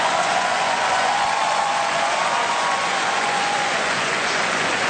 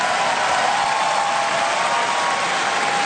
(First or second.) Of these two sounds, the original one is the second